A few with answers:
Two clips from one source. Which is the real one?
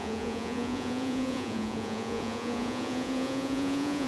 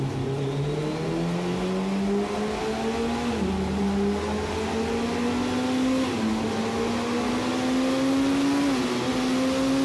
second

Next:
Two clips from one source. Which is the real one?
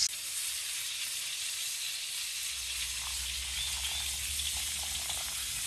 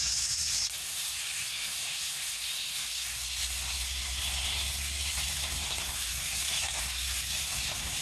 first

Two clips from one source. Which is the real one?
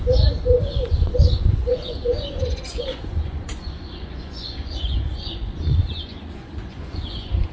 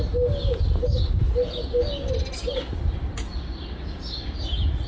second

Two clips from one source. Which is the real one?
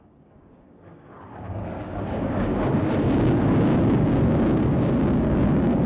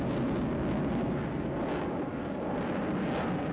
second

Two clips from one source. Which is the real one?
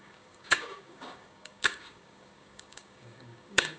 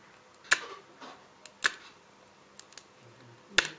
second